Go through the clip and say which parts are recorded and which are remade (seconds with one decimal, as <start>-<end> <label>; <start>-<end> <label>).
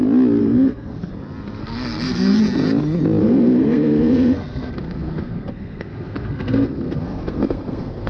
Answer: 0.0-0.4 recorded; 0.4-1.1 remade; 1.1-1.6 recorded; 1.6-2.4 remade; 2.4-3.2 recorded; 3.2-8.1 remade